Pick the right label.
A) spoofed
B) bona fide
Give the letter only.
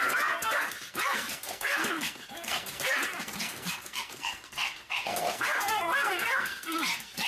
A